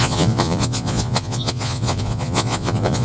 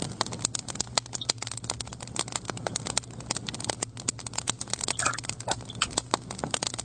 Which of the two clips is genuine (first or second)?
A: second